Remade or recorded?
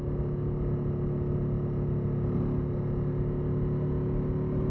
recorded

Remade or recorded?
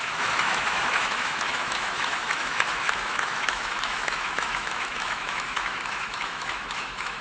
remade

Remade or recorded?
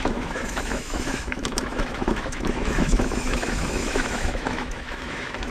remade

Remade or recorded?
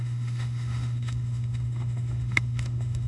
remade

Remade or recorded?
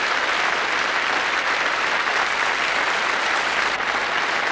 recorded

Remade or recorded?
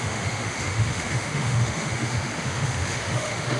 remade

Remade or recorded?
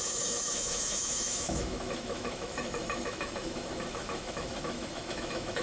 remade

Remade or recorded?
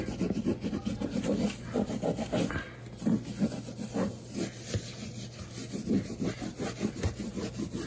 recorded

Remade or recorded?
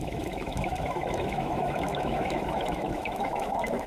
remade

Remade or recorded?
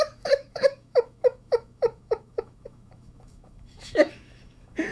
remade